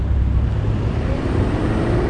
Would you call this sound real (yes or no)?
yes